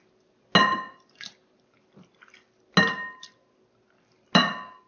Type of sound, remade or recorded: recorded